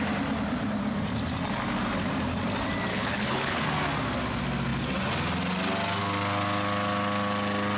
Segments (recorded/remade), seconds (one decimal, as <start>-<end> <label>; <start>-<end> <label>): 0.0-2.9 recorded; 2.9-3.6 remade; 3.6-7.8 recorded